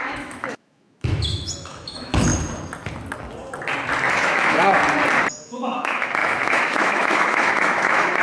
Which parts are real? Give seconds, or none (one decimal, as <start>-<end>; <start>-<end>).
2.3-4.1; 4.8-5.4